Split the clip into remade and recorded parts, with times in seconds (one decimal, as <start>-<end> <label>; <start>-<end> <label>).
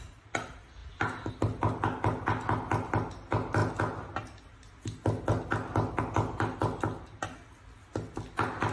0.0-8.7 recorded